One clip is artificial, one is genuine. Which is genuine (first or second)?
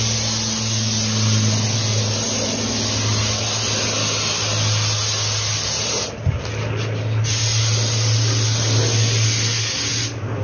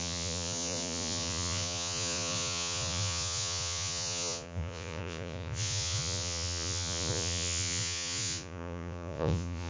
first